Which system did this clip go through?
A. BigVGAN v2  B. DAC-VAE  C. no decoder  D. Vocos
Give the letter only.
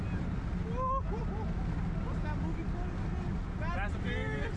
C